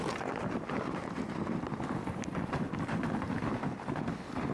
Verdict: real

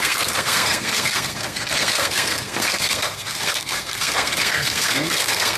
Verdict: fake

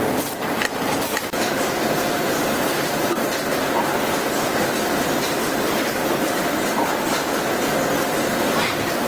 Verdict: fake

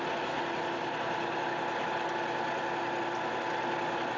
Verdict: real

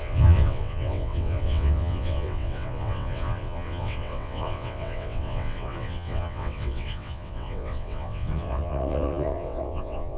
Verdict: fake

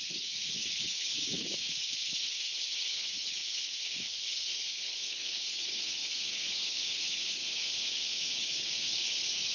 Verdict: fake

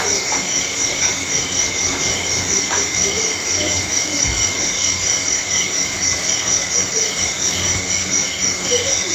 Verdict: fake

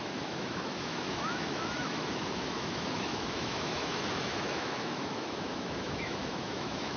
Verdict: fake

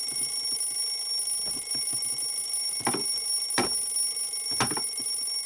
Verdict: real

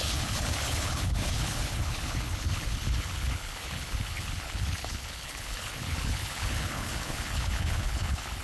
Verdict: fake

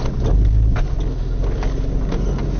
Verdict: real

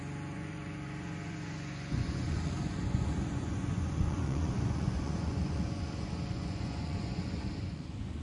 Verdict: fake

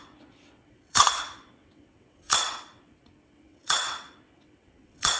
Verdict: fake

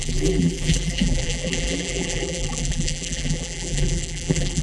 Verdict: fake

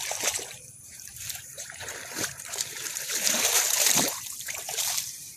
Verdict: fake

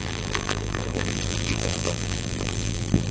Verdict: fake